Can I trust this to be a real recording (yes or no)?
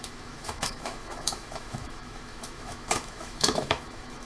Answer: no